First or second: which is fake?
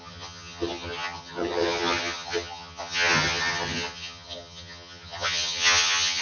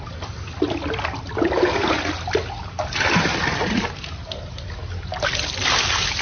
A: first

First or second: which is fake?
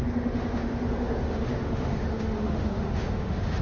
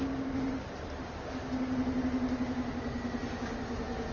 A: first